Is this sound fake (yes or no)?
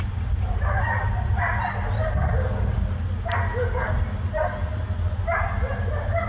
no